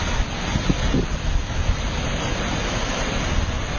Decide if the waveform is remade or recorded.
recorded